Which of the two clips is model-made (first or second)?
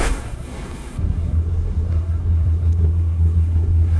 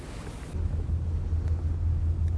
first